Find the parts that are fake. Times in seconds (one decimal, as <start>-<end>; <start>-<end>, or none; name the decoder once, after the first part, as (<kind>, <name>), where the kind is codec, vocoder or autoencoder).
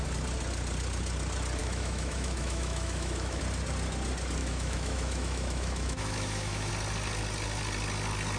1.6-3.4 (autoencoder, DAC-VAE); 4.4-6.7